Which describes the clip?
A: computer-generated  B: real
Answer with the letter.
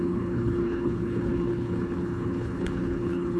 A